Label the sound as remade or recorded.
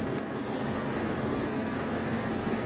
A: remade